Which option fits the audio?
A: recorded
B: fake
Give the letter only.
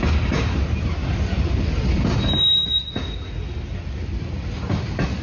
A